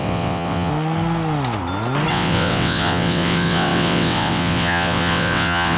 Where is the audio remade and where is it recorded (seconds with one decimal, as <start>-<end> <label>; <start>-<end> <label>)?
0.0-0.7 remade; 0.7-2.1 recorded; 2.1-5.8 remade